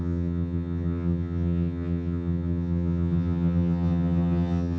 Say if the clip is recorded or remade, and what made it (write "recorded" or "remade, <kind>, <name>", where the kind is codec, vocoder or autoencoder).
remade, vocoder, HiFi-GAN